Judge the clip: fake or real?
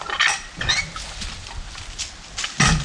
real